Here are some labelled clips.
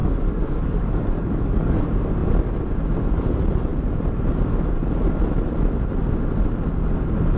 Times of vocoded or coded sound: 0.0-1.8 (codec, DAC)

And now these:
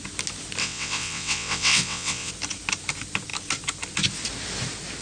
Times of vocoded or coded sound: 0.6-2.3 (vocoder, WaveNeXt)

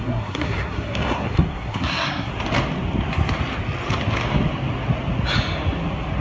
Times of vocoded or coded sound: 0.0-2.3 (codec, SNAC)

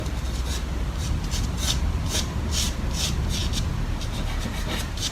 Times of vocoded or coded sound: none

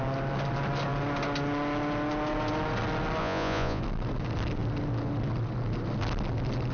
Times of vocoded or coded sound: 3.2-3.8 (vocoder, Vocos)